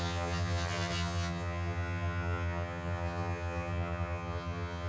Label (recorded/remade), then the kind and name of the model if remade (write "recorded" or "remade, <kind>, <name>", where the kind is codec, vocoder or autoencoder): remade, vocoder, HiFi-GAN